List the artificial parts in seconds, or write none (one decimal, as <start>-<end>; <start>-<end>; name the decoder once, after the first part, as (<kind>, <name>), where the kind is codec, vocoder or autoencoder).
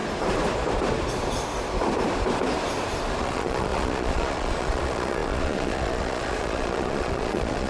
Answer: 3.2-7.7 (vocoder, Vocos)